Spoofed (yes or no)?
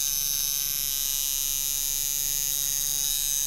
no